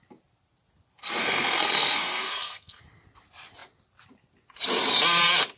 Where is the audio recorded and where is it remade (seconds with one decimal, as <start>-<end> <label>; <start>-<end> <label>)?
0.0-1.2 recorded; 1.2-2.8 remade; 2.8-5.6 recorded

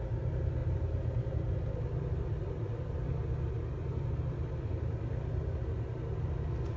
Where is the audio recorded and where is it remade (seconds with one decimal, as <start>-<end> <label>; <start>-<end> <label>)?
0.0-0.6 recorded; 0.6-3.1 remade; 3.1-3.7 recorded; 3.7-4.9 remade; 4.9-6.8 recorded

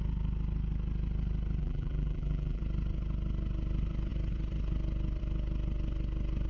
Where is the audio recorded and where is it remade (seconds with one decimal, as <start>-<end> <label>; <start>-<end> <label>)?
0.0-1.6 recorded; 1.6-2.6 remade; 2.6-6.5 recorded

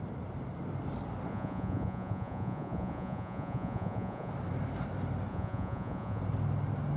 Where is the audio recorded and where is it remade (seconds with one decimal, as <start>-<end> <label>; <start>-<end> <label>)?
0.0-1.3 recorded; 1.3-4.3 remade; 4.3-5.3 recorded; 5.3-6.2 remade; 6.2-7.0 recorded

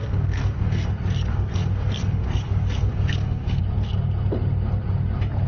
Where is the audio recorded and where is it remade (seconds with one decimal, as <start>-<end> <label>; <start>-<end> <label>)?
0.0-0.9 remade; 0.9-1.3 recorded; 1.3-3.6 remade; 3.6-5.5 recorded

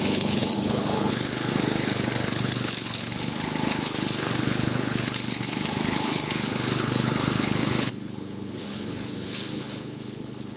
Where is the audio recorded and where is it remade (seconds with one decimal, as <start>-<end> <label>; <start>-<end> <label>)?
0.0-10.6 remade

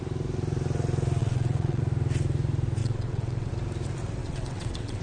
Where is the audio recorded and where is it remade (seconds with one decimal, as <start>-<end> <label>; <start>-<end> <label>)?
0.0-1.2 recorded; 1.2-1.8 remade; 1.8-2.8 recorded; 2.8-3.5 remade; 3.5-4.2 recorded; 4.2-5.0 remade